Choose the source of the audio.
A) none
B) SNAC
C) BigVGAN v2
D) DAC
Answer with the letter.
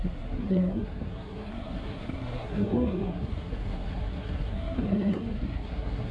B